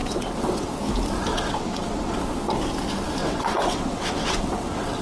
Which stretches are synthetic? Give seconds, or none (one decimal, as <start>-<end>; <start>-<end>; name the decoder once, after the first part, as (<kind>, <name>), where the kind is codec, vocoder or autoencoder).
0.0-0.7 (vocoder, WaveNeXt); 1.3-2.2; 3.2-5.0